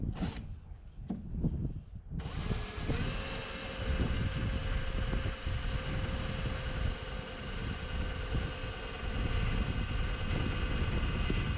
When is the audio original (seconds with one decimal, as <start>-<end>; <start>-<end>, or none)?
0.0-11.6